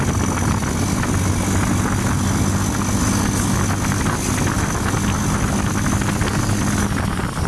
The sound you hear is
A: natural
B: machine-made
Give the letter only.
A